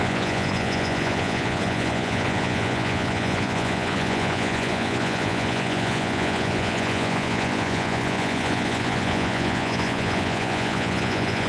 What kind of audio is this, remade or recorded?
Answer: remade